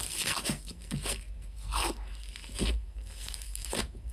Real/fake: fake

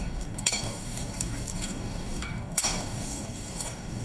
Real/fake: fake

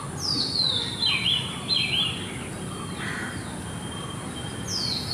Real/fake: real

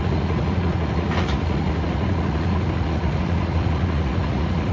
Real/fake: fake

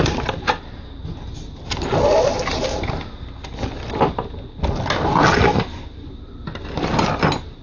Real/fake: real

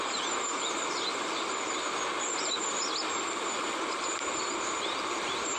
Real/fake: real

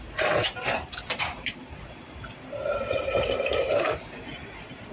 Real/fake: fake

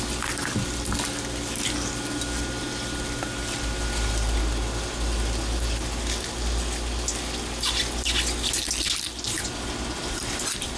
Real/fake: real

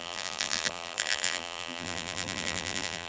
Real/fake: fake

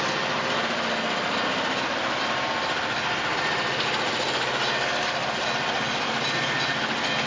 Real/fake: real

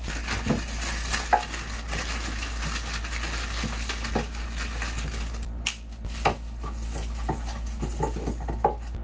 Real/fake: real